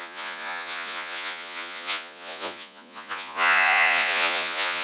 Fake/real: fake